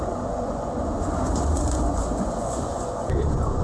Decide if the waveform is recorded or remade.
remade